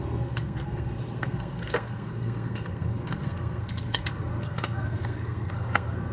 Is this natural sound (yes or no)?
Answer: no